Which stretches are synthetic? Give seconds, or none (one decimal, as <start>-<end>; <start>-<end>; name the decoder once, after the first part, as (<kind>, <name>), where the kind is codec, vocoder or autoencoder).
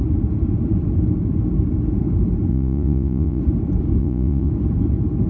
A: 2.5-3.4 (vocoder, Vocos); 4.0-4.5